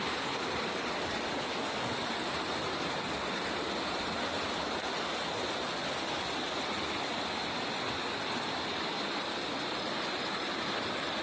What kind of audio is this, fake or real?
real